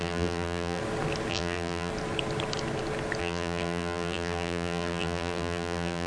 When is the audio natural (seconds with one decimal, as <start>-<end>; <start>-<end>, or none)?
0.8-1.3; 1.9-3.2